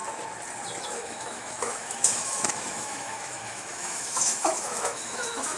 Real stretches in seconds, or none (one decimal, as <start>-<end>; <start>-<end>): 0.0-0.8